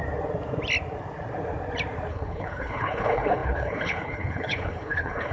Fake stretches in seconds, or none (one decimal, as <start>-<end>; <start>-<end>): 2.1-5.3